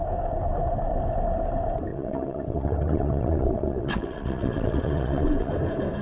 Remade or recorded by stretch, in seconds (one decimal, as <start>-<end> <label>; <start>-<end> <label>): 0.0-1.9 recorded; 1.9-5.5 remade; 5.5-6.0 recorded